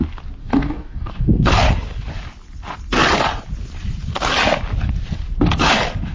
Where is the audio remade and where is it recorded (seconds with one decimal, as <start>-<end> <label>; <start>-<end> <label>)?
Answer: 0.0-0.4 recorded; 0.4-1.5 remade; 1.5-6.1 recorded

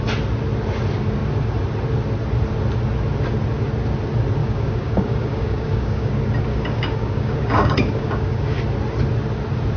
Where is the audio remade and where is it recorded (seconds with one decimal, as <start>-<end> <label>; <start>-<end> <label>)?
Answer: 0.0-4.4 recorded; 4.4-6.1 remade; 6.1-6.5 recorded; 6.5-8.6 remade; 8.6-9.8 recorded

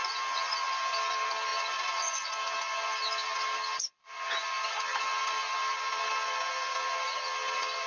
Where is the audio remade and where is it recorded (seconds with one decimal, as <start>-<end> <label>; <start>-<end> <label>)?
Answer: 0.0-7.9 recorded

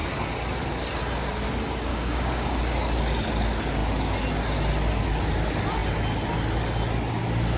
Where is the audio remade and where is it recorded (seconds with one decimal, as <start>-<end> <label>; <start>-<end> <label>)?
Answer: 0.0-1.9 recorded; 1.9-2.6 remade; 2.6-7.6 recorded

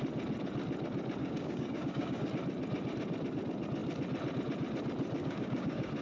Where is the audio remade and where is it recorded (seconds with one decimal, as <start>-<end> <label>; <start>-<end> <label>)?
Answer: 0.0-1.2 recorded; 1.2-2.3 remade; 2.3-5.2 recorded; 5.2-6.0 remade